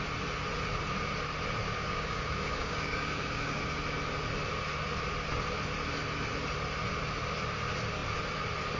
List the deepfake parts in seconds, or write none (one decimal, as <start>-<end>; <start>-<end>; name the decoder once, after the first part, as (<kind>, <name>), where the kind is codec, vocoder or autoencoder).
1.6-3.6 (codec, DAC)

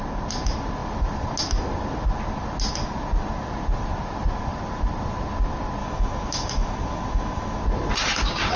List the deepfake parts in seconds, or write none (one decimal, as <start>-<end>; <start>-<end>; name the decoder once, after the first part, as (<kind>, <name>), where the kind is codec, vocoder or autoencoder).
5.8-7.6 (autoencoder, DAC-VAE)